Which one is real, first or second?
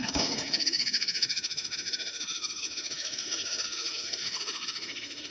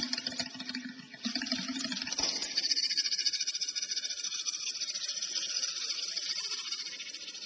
second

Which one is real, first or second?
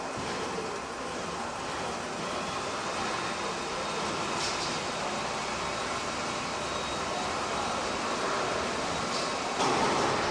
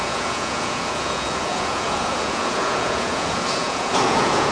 first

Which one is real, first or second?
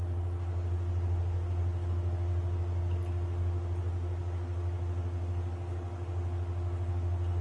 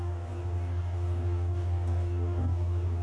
first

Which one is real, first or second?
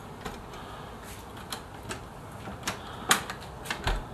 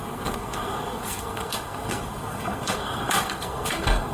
first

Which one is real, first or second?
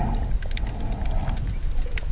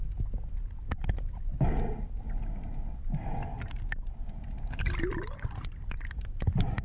first